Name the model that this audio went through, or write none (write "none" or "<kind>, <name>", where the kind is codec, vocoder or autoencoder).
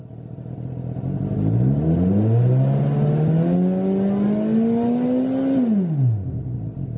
none